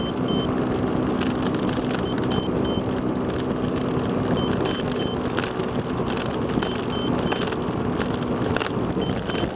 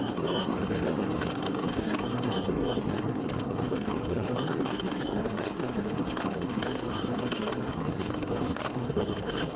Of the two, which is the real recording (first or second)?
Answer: first